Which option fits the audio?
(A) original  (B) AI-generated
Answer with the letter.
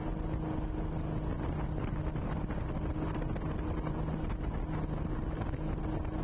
A